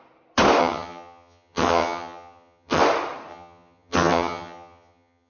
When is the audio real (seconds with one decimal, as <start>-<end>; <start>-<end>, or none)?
0.0-0.6; 2.8-3.3